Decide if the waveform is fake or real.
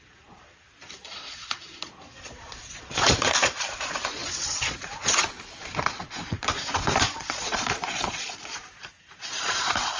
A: fake